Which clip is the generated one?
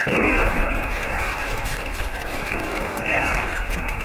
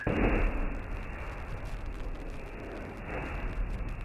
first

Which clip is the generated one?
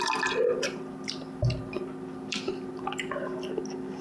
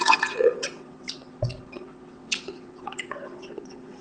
second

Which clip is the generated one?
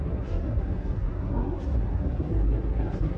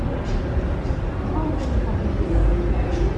first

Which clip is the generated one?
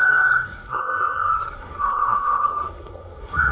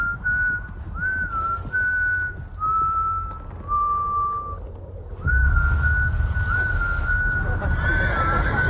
first